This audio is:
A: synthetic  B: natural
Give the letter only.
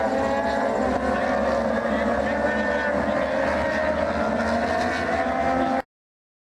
B